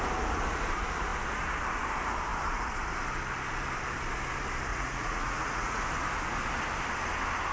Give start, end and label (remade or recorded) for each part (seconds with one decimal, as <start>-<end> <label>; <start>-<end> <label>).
0.0-4.7 recorded; 4.7-5.8 remade; 5.8-7.5 recorded